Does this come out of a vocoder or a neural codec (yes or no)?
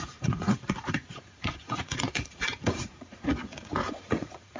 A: yes